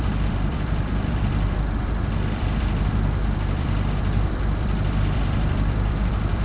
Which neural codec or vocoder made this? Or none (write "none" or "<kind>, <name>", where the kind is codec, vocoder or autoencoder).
vocoder, BigVGAN v2